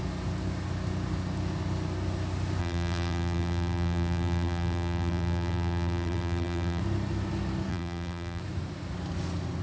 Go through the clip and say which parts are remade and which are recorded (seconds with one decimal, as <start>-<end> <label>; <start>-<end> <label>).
0.0-2.6 recorded; 2.6-6.8 remade; 6.8-7.7 recorded; 7.7-8.4 remade; 8.4-9.6 recorded